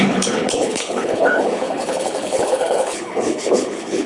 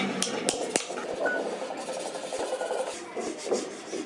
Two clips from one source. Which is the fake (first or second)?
first